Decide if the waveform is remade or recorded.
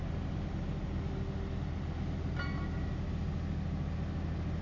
recorded